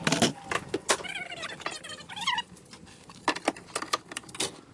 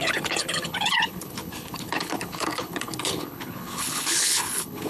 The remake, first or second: second